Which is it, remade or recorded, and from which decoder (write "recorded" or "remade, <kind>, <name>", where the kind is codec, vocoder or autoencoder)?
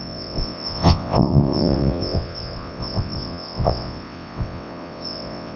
remade, vocoder, WaveNeXt